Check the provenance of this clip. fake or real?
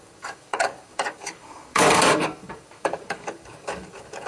fake